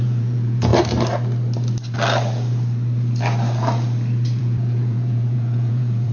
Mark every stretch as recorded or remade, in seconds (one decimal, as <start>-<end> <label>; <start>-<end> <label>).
0.0-0.7 remade; 0.7-4.4 recorded; 4.4-6.1 remade

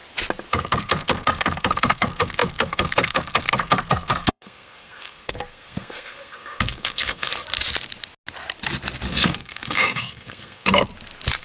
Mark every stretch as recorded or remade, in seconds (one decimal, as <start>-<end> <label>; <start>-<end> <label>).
0.0-0.5 recorded; 0.5-7.3 remade; 7.3-9.1 recorded; 9.1-10.9 remade; 10.9-11.4 recorded

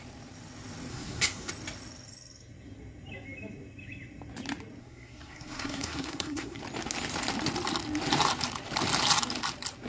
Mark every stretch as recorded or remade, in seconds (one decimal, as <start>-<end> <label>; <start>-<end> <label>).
0.0-0.9 recorded; 0.9-1.5 remade; 1.5-4.8 recorded; 4.8-6.6 remade; 6.6-9.9 recorded

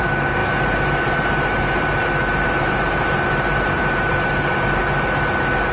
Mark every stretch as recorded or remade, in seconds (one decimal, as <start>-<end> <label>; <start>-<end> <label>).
0.0-4.8 remade; 4.8-5.7 recorded

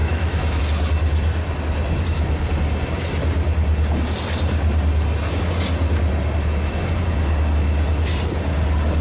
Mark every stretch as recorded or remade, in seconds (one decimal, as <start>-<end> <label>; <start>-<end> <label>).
0.0-0.6 remade; 0.6-9.0 recorded

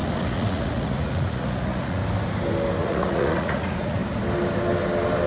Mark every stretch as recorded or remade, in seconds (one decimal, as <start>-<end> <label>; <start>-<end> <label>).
0.0-2.0 remade; 2.0-2.8 recorded; 2.8-4.0 remade; 4.0-5.3 recorded